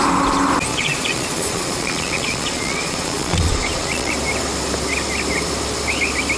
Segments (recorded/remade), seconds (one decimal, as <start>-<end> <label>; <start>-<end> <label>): 0.0-0.7 recorded; 0.7-4.1 remade; 4.1-6.4 recorded